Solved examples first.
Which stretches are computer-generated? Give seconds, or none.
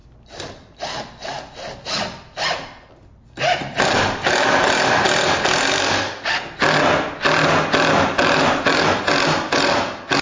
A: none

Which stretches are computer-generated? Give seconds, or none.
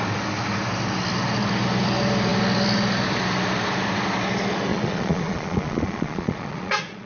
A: 4.7-7.1 (vocoder, Vocos)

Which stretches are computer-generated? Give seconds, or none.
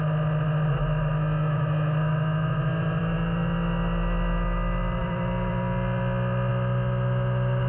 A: none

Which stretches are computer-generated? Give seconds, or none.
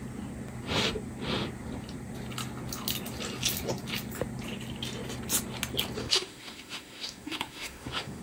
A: 6.0-8.2 (autoencoder, DAC-VAE)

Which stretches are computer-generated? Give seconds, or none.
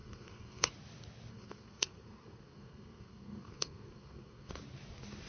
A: 0.0-0.7 (codec, SNAC); 1.3-4.5